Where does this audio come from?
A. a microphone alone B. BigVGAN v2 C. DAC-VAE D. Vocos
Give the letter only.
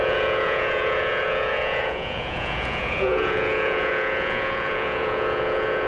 D